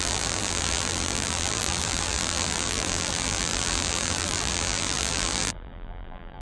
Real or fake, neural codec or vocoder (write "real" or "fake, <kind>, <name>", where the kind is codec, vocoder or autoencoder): fake, vocoder, BigVGAN v2